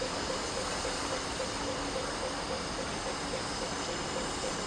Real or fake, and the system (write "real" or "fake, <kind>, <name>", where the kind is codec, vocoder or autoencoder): real